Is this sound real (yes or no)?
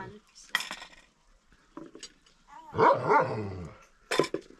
yes